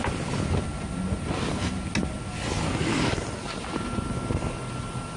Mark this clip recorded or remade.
recorded